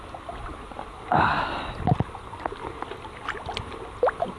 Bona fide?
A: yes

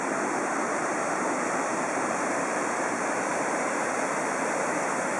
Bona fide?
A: no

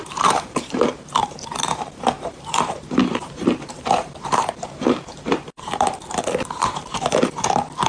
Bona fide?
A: no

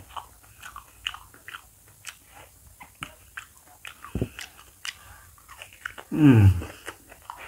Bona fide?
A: yes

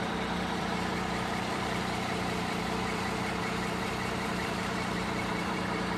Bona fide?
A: no